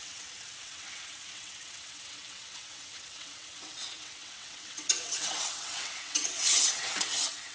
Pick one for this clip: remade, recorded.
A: remade